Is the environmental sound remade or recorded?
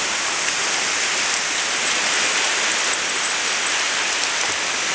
recorded